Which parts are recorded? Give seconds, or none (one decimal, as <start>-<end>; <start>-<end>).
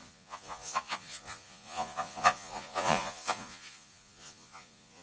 none